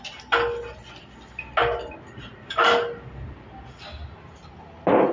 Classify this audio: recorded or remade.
recorded